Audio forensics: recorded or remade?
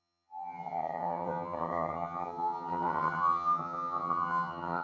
remade